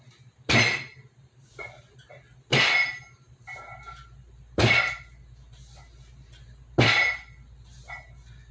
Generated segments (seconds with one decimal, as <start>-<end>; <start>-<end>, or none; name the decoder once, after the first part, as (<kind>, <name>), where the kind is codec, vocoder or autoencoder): none